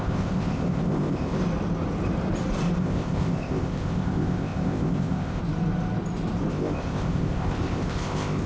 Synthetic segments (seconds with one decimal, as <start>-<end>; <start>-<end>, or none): 0.0-1.4; 2.8-5.4; 6.5-8.5